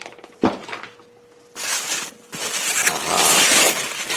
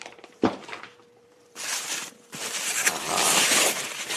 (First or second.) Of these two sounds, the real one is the first